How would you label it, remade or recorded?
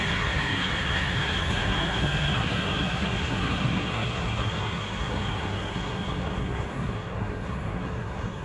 remade